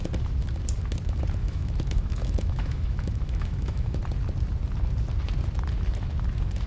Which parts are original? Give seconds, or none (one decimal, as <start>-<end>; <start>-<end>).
0.0-1.4; 4.0-6.7